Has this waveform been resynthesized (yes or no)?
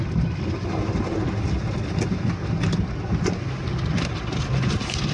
no